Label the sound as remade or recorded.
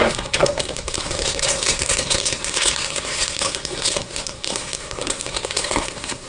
remade